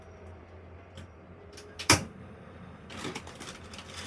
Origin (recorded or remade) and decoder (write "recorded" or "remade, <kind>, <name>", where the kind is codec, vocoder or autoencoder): recorded